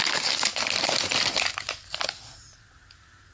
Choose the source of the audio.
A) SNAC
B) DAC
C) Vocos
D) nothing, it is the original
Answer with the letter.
D